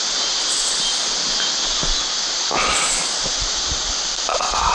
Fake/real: real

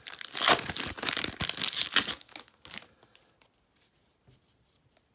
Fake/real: real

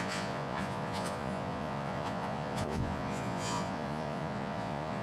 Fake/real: fake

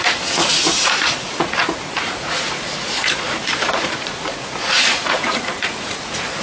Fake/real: fake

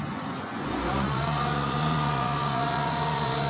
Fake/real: fake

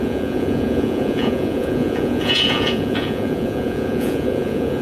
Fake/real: fake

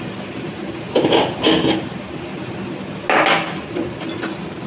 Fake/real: real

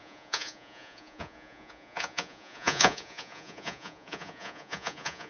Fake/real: fake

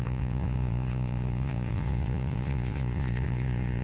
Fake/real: fake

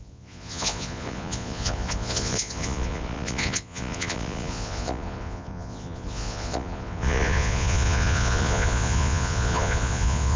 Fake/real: fake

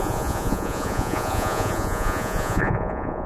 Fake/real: fake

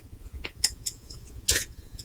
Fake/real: fake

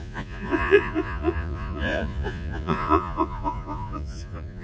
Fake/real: fake